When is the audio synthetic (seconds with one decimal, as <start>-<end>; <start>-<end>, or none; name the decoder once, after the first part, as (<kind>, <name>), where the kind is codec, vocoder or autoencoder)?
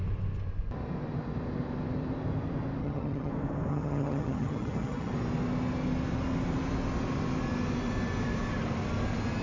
2.8-3.3 (vocoder, HiFi-GAN); 3.7-5.1